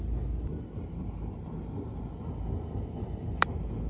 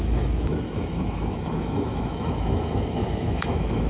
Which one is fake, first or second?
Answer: second